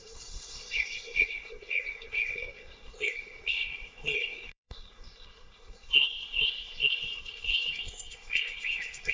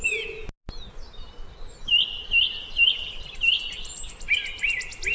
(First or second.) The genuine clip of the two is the second